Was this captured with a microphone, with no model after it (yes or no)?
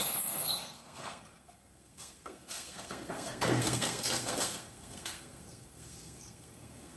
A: no